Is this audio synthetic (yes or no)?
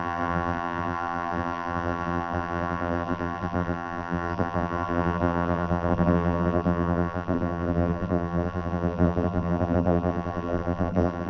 yes